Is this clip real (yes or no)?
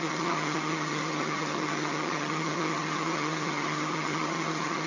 no